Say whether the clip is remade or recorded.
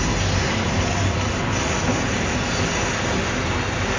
recorded